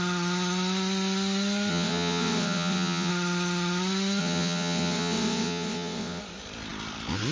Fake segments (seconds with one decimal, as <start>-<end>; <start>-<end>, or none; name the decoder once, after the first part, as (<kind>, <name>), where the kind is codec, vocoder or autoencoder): 1.7-3.1 (vocoder, WaveNeXt); 4.2-6.2